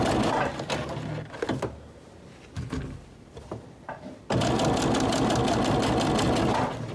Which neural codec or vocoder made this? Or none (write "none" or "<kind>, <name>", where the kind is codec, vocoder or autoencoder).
none